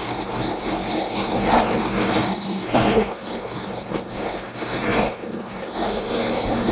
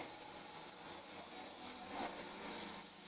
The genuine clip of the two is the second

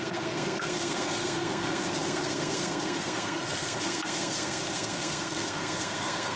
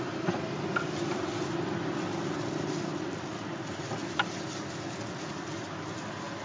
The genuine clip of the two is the second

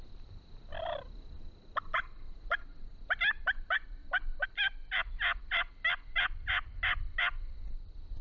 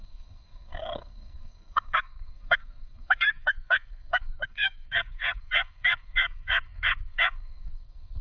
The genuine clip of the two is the first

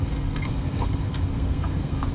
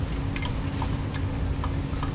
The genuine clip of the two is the second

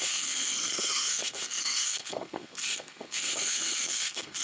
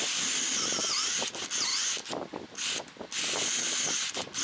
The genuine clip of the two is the second